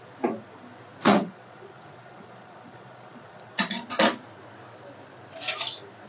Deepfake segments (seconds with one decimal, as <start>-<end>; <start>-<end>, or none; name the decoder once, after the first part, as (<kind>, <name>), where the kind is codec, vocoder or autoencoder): 1.0-3.8 (vocoder, Vocos)

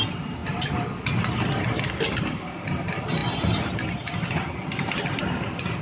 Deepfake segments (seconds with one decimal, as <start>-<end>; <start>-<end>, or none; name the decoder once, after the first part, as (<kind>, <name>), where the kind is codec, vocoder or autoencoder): none

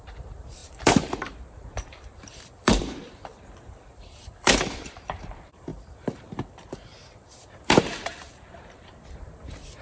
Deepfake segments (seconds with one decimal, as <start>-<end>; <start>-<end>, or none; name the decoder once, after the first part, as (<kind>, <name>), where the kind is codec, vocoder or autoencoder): 0.0-9.8 (vocoder, BigVGAN v2)

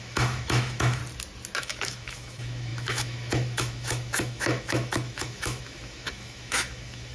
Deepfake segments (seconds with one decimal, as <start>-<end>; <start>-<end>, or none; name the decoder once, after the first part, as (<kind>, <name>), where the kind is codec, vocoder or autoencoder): 0.0-1.0 (autoencoder, DAC-VAE); 1.6-7.1

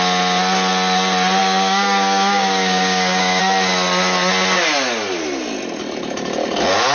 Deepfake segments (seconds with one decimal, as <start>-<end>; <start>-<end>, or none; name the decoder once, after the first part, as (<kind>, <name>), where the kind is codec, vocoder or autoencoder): 1.4-3.4 (codec, DAC)

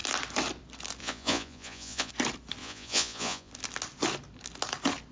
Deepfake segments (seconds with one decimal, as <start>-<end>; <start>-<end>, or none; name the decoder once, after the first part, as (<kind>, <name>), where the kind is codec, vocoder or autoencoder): 1.0-2.1 (vocoder, Vocos); 2.6-3.5

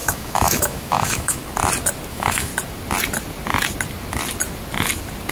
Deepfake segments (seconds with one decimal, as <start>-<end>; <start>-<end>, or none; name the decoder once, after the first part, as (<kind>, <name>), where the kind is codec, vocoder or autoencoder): 0.0-1.4 (autoencoder, DAC-VAE); 2.1-2.5

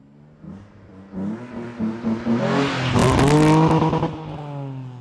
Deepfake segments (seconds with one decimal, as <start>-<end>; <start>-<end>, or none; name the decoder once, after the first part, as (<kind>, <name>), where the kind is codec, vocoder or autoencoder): none